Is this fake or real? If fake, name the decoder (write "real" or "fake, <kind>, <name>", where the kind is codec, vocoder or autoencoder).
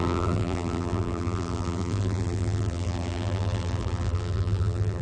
fake, vocoder, BigVGAN v2